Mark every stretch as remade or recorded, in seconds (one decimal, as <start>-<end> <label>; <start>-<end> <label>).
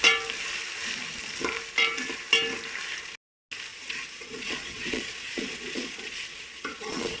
0.0-3.7 recorded; 3.7-7.2 remade